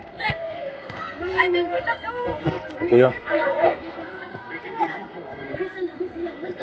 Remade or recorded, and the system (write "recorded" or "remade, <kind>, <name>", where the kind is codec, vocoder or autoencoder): remade, codec, SNAC